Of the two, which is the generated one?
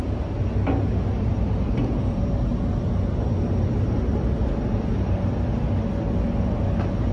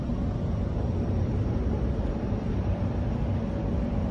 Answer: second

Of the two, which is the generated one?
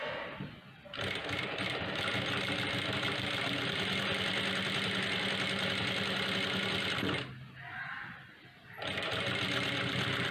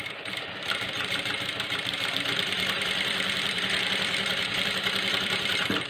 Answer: second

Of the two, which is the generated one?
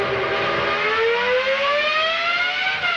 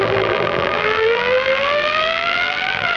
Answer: second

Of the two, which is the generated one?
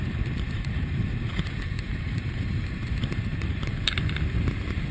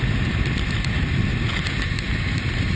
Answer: first